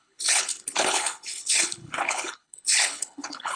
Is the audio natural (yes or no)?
no